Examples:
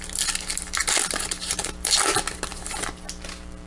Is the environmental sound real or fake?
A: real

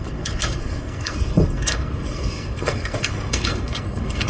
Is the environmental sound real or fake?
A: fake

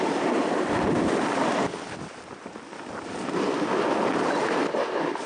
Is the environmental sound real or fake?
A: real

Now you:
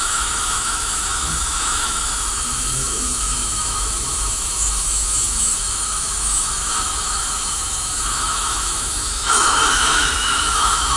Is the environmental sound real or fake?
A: fake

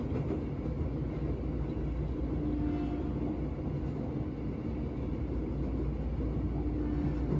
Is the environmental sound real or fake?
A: real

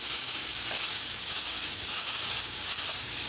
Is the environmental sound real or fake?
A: fake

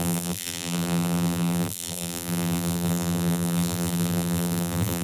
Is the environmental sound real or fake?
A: fake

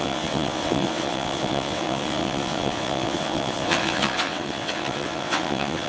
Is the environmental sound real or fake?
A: fake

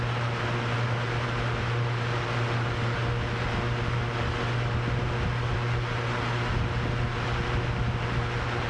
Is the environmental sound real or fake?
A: real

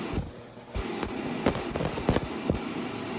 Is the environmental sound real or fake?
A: real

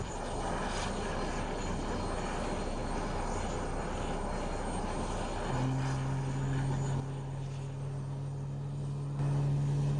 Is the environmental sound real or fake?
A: real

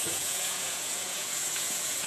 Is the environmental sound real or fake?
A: fake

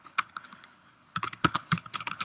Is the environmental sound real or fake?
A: fake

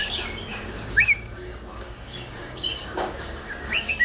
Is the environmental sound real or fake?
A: fake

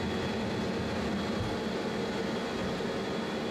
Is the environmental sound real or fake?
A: real